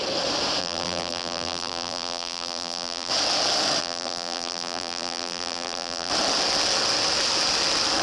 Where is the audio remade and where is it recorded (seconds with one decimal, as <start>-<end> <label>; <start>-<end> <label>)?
0.0-0.6 recorded; 0.6-3.1 remade; 3.1-3.8 recorded; 3.8-6.1 remade; 6.1-8.0 recorded

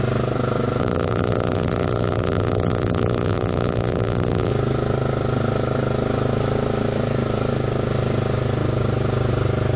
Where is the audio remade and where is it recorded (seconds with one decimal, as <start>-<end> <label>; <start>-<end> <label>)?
0.0-0.8 recorded; 0.8-4.5 remade; 4.5-9.8 recorded

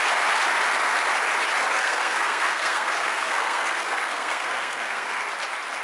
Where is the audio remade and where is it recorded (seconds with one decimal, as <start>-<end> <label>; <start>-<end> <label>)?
0.0-1.7 recorded; 1.7-5.2 remade; 5.2-5.8 recorded

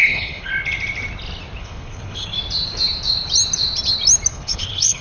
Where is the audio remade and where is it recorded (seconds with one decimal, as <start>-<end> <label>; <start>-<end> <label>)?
0.0-0.5 remade; 0.5-1.6 recorded; 1.6-2.3 remade; 2.3-4.3 recorded; 4.3-5.0 remade

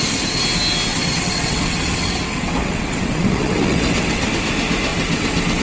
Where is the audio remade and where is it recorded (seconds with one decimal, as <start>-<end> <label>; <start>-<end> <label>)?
0.0-0.9 recorded; 0.9-4.3 remade; 4.3-4.9 recorded; 4.9-5.6 remade

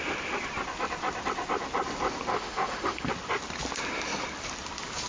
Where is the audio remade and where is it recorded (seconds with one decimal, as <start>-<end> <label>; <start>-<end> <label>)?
0.0-2.3 recorded; 2.3-3.1 remade; 3.1-5.1 recorded